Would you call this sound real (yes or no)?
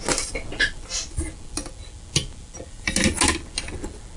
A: yes